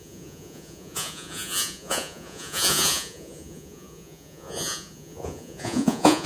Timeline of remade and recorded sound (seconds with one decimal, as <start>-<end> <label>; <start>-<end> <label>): 0.0-6.3 remade